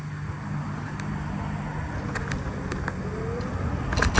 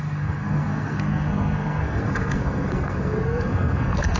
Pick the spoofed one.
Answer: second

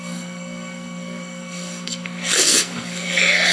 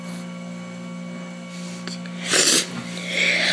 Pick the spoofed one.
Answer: first